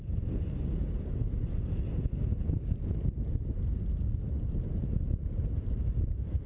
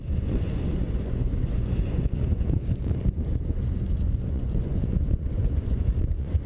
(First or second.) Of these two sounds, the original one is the first